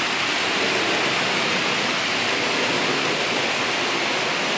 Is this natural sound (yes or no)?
yes